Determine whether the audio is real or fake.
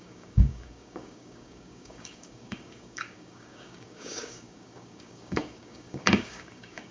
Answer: fake